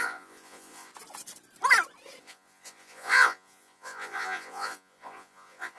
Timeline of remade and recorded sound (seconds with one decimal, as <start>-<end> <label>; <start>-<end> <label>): 0.0-0.9 remade; 0.9-2.2 recorded; 2.2-5.8 remade